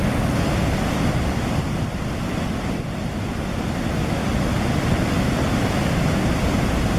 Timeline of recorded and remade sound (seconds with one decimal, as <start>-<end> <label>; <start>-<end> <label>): 0.0-0.6 recorded; 0.6-1.4 remade; 1.4-4.2 recorded; 4.2-6.3 remade; 6.3-7.0 recorded